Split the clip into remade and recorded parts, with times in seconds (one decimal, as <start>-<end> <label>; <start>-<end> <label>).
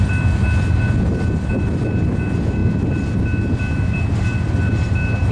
0.0-5.3 recorded